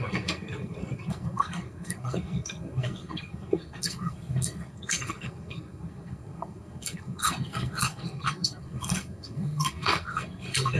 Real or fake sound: fake